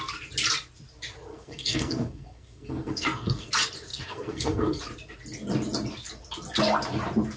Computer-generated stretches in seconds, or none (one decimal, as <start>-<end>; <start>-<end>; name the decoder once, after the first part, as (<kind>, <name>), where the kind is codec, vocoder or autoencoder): 1.3-3.5 (codec, SNAC); 3.9-4.8